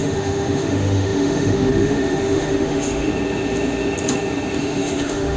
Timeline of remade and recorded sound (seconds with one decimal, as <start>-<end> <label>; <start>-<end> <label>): 0.0-3.1 remade; 3.1-4.6 recorded; 4.6-5.4 remade